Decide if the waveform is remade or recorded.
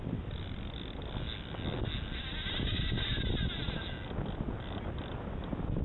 recorded